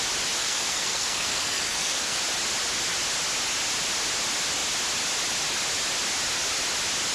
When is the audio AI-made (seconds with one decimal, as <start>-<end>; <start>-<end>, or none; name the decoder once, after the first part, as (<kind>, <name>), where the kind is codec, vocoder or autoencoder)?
0.4-2.2 (codec, SNAC)